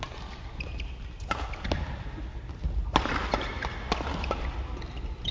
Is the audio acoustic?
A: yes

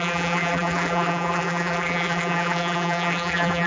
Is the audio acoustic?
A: no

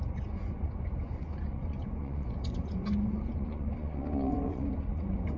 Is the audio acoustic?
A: no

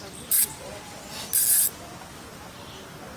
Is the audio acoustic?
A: yes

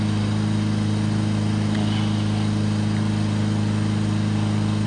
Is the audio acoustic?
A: yes